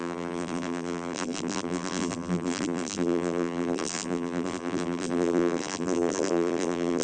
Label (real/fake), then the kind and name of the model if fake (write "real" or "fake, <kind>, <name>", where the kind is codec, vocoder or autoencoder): fake, vocoder, BigVGAN v2